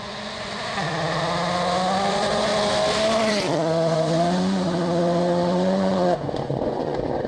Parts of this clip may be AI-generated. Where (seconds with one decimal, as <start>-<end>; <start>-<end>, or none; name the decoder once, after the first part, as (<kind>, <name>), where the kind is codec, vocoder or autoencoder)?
0.0-0.9 (vocoder, Vocos); 2.1-2.5; 3.3-7.3